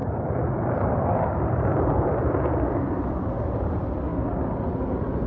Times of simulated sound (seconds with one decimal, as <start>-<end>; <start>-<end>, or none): 0.0-3.1